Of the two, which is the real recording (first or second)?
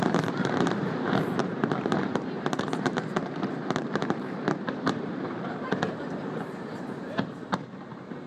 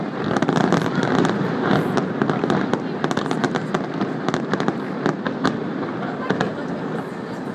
second